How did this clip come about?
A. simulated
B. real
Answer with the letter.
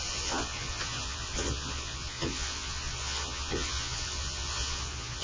A